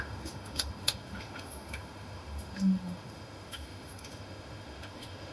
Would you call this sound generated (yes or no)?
yes